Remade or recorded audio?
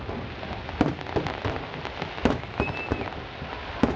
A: recorded